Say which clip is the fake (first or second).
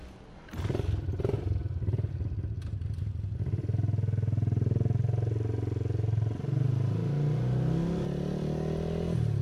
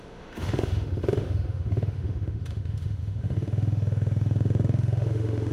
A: second